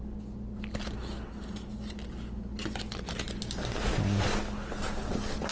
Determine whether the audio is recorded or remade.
recorded